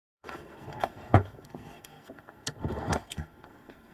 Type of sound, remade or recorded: remade